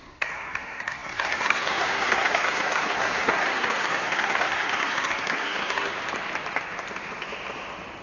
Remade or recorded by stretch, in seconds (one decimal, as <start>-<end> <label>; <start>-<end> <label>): 0.0-5.9 remade; 5.9-8.0 recorded